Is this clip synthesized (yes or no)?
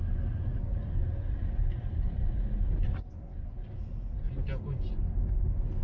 no